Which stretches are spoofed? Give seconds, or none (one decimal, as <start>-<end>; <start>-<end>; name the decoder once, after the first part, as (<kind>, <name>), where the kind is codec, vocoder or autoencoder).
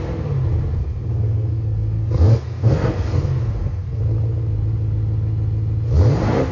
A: 0.8-4.0 (codec, SNAC)